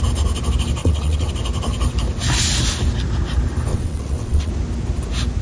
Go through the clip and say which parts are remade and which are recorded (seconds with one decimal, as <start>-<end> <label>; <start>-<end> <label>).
0.0-0.8 recorded; 0.8-1.3 remade; 1.3-3.7 recorded; 3.7-4.5 remade; 4.5-5.4 recorded

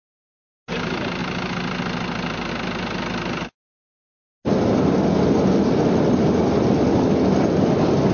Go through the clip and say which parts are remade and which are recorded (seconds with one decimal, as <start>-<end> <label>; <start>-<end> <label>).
0.0-8.1 recorded